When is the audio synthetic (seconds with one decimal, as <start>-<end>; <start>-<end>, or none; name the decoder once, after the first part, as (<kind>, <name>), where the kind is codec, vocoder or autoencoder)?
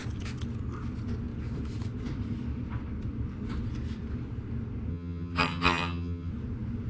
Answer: 4.9-6.3 (vocoder, HiFi-GAN)